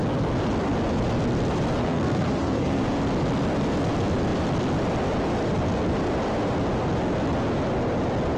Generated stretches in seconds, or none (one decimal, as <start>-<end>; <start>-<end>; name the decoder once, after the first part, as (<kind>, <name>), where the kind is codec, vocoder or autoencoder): 1.8-2.9 (codec, SNAC)

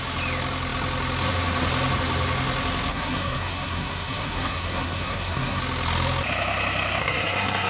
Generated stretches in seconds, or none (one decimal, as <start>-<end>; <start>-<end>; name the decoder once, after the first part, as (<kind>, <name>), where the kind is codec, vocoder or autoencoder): 2.9-5.6 (codec, SNAC); 7.0-7.7

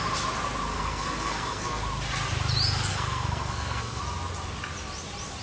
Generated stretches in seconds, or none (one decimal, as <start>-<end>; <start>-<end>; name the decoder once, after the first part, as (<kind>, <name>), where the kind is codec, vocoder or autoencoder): 0.7-1.8 (codec, SNAC); 2.9-4.0

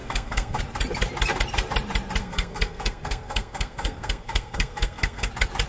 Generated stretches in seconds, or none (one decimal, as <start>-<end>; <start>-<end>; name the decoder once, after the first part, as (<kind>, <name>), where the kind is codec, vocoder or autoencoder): 0.0-0.6 (codec, SNAC); 2.2-5.3

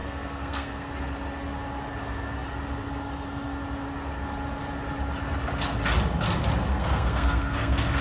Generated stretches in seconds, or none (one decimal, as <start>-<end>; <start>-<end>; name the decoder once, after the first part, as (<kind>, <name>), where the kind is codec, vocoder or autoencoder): 0.0-0.9 (codec, SNAC); 6.7-8.0

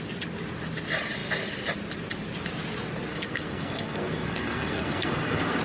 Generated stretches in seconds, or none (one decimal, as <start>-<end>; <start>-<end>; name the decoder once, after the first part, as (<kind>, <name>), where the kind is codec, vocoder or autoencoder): 3.1-5.6 (codec, SNAC)